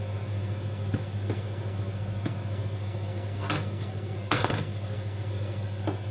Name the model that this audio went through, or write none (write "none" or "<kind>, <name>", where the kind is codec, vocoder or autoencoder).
codec, SNAC